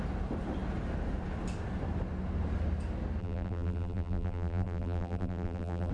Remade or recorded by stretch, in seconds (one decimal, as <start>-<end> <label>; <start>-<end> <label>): 0.0-3.2 recorded; 3.2-5.9 remade